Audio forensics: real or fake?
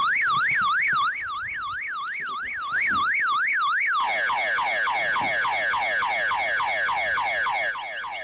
real